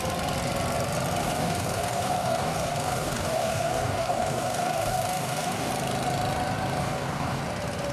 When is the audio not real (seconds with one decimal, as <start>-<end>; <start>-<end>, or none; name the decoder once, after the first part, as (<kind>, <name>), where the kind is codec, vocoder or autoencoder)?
1.2-5.7 (codec, DAC); 6.8-7.4